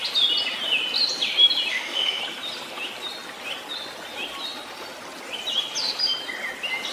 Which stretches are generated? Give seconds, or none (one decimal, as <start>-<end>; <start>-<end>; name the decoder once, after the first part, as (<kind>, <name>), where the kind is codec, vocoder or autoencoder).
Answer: 1.7-2.2 (autoencoder, DAC-VAE)